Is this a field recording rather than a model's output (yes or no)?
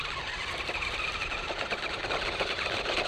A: yes